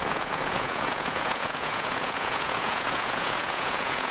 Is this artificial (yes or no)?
yes